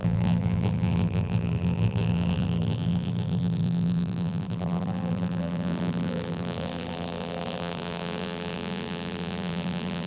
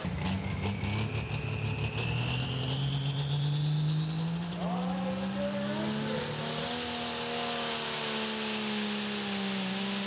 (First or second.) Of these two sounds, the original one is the second